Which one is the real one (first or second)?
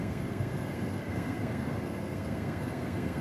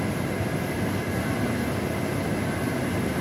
second